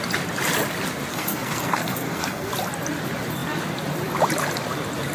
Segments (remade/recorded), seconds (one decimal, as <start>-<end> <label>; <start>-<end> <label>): 0.0-1.1 recorded; 1.1-2.5 remade; 2.5-5.1 recorded